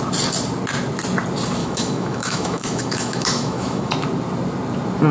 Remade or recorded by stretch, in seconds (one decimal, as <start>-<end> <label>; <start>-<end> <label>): 0.0-1.6 recorded; 1.6-3.9 remade; 3.9-5.1 recorded